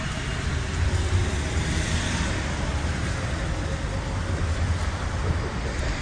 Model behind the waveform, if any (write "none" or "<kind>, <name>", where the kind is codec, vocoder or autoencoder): none